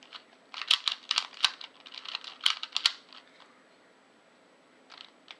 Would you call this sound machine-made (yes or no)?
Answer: no